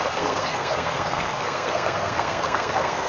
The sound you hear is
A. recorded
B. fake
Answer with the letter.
B